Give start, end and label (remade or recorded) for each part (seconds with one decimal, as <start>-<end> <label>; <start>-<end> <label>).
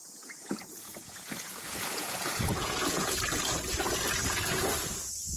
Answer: 0.0-3.2 remade; 3.2-5.4 recorded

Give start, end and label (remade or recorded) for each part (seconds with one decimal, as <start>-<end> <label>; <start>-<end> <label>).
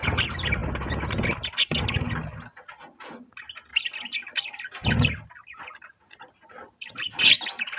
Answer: 0.0-7.8 recorded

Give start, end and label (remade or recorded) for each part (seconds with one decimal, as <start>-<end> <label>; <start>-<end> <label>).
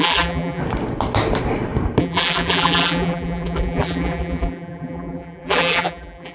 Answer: 0.0-0.6 remade; 0.6-2.0 recorded; 2.0-6.3 remade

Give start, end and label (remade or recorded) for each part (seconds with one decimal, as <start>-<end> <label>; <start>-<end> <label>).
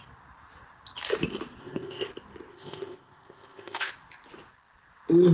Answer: 0.0-1.6 recorded; 1.6-2.1 remade; 2.1-2.5 recorded; 2.5-3.9 remade; 3.9-5.3 recorded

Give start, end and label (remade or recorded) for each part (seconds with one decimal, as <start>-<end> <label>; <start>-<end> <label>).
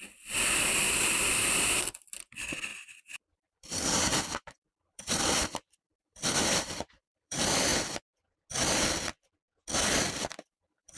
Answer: 0.0-7.7 remade; 7.7-9.9 recorded; 9.9-11.0 remade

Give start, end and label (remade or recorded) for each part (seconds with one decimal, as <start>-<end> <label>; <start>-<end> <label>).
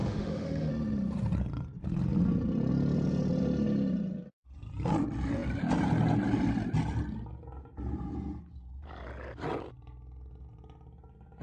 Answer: 0.0-0.7 remade; 0.7-11.4 recorded